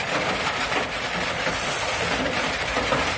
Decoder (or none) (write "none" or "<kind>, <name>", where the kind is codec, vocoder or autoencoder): none